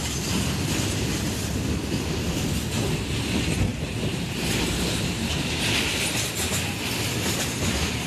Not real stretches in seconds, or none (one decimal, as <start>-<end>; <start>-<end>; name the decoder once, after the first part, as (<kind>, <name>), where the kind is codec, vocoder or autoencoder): 3.7-5.9 (vocoder, BigVGAN v2)